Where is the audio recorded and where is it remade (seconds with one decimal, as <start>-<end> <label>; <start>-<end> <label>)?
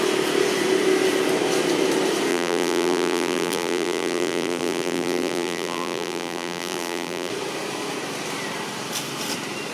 0.0-2.3 recorded; 2.3-7.3 remade; 7.3-9.7 recorded